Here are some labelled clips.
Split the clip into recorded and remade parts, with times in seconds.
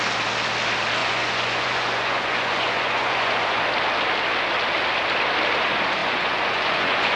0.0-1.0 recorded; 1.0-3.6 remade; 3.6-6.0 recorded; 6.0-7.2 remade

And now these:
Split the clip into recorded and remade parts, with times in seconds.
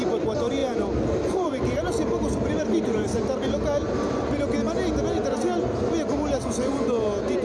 0.0-0.6 recorded; 0.6-4.3 remade; 4.3-7.4 recorded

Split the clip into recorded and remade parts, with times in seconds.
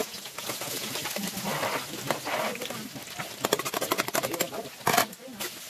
0.0-0.9 remade; 0.9-5.7 recorded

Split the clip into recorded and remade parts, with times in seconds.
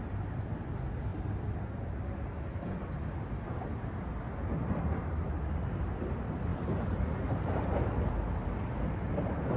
0.0-6.5 recorded; 6.5-9.0 remade; 9.0-9.6 recorded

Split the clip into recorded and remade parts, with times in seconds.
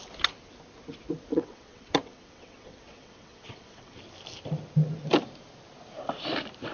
0.0-1.3 recorded; 1.3-4.0 remade; 4.0-6.7 recorded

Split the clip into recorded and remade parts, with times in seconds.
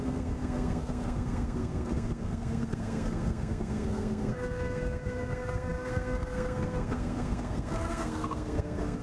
0.0-9.0 remade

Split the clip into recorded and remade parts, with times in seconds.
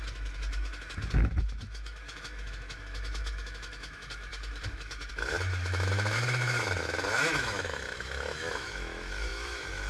0.0-9.9 remade